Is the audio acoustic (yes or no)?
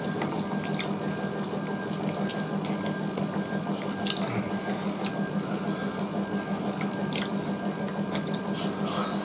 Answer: yes